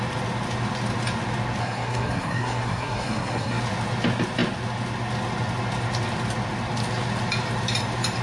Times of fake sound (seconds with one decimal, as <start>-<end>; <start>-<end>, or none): 1.6-3.6